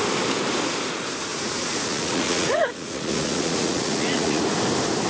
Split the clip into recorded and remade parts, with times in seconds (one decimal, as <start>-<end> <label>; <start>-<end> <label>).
0.0-1.3 recorded; 1.3-4.4 remade; 4.4-5.1 recorded